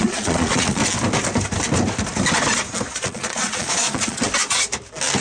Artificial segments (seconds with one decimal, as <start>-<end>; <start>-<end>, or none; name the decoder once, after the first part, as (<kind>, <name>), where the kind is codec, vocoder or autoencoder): 0.0-0.8 (vocoder, Vocos); 2.9-4.2